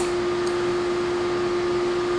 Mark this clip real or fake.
real